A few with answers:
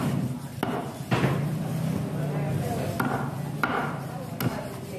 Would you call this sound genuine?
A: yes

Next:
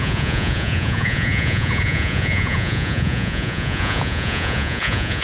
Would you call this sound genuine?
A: no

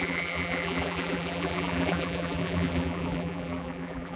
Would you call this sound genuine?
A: no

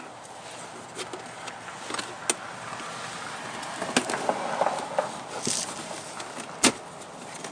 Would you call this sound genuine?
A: yes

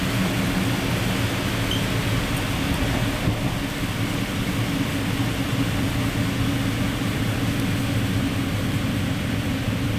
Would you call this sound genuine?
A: yes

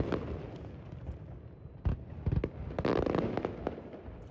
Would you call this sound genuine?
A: yes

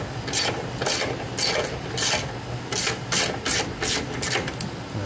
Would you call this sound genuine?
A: yes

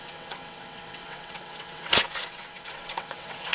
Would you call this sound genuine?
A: no